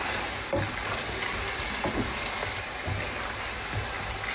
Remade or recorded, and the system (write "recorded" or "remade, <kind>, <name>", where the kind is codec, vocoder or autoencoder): recorded